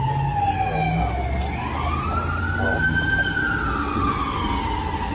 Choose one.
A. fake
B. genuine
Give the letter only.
B